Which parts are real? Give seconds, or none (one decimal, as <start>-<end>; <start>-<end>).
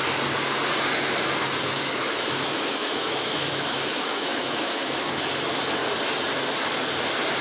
0.0-1.4; 5.3-7.4